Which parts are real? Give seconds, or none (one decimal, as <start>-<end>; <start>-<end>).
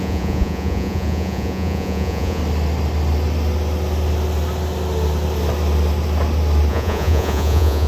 2.4-6.7